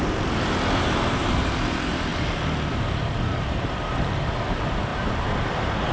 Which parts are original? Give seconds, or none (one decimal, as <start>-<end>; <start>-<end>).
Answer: 2.1-2.7